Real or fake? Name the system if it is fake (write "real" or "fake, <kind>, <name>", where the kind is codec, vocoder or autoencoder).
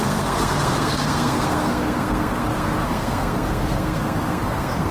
fake, codec, SNAC